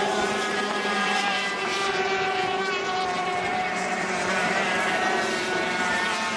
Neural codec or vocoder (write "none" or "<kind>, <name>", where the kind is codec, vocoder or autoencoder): vocoder, BigVGAN v2